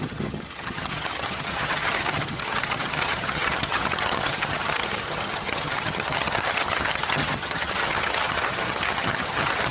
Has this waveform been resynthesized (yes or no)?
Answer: yes